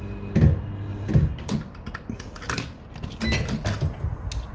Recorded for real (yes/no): yes